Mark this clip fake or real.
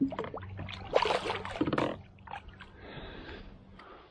real